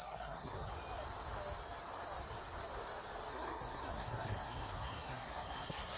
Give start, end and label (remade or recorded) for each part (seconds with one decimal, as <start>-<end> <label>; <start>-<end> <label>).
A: 0.0-0.7 remade; 0.7-3.3 recorded; 3.3-6.0 remade